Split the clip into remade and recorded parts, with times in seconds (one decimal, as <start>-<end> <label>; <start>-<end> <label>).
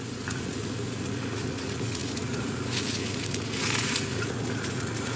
0.0-5.2 remade